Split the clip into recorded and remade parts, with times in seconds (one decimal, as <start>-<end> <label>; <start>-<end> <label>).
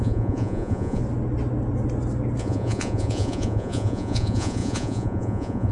0.0-1.0 remade; 1.0-2.4 recorded; 2.4-5.7 remade